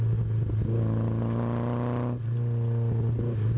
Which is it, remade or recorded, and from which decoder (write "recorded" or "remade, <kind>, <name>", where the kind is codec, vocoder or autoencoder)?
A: recorded